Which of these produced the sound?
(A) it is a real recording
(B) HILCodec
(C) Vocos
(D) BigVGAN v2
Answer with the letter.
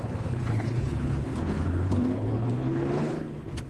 B